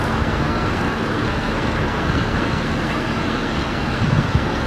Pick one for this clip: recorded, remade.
remade